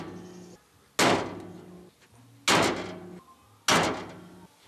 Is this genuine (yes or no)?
yes